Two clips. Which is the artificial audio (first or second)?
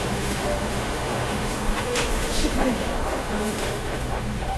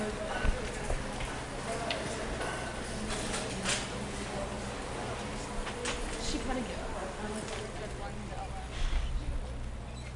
first